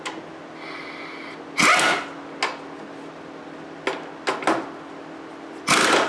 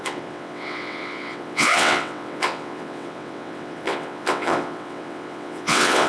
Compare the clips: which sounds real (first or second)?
first